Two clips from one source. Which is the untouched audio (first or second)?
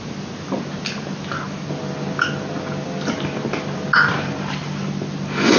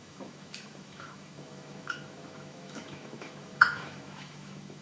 first